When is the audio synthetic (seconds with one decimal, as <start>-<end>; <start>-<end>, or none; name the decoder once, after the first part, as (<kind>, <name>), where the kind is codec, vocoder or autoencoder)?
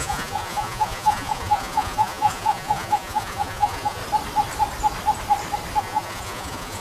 0.0-4.0 (vocoder, Vocos); 5.8-6.8